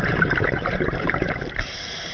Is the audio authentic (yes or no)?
no